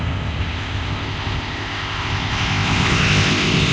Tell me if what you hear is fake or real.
fake